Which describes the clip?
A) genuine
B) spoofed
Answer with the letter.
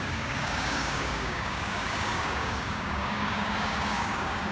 B